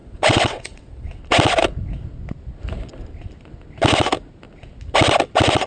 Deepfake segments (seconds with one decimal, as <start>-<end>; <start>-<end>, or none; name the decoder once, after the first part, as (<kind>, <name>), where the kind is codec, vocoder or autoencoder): 0.0-1.2 (vocoder, WaveNeXt)